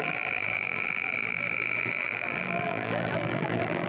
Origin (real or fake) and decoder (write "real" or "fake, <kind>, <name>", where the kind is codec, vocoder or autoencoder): fake, vocoder, BigVGAN v2